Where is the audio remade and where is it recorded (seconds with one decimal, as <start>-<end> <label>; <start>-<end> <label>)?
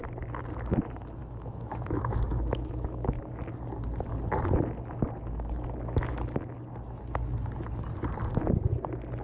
0.0-1.2 recorded; 1.2-3.2 remade; 3.2-9.2 recorded